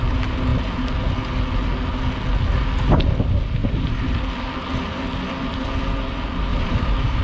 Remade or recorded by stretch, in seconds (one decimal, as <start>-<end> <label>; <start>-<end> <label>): 0.0-3.6 recorded; 3.6-4.2 remade; 4.2-6.5 recorded; 6.5-7.2 remade